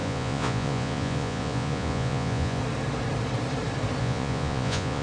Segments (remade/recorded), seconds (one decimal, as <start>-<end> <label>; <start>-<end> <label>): 0.0-2.6 remade; 2.6-4.0 recorded; 4.0-5.0 remade